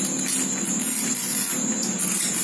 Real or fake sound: fake